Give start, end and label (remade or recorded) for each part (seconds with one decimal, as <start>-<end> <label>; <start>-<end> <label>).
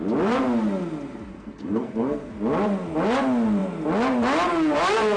0.0-1.3 recorded; 1.3-2.3 remade; 2.3-5.2 recorded